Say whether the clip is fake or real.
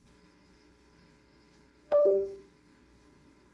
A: fake